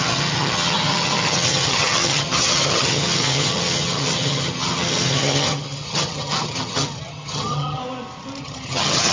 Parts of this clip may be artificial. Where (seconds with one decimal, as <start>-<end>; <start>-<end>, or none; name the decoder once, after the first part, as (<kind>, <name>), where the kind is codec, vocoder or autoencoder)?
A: 0.0-7.8 (vocoder, HiFi-GAN); 8.4-9.1